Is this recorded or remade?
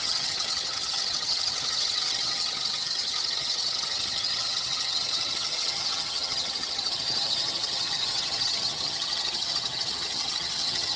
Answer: remade